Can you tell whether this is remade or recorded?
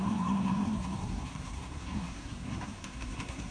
remade